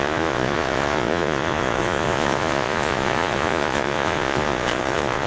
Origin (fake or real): fake